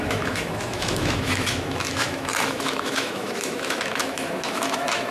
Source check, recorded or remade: remade